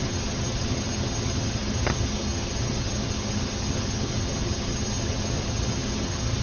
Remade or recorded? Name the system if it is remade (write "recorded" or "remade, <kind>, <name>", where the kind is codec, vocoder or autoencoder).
remade, vocoder, HiFi-GAN